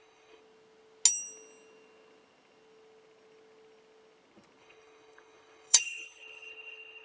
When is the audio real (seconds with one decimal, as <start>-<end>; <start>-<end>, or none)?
0.4-4.6